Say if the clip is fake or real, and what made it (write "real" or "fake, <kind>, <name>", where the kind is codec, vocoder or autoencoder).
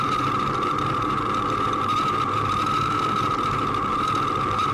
fake, vocoder, BigVGAN v2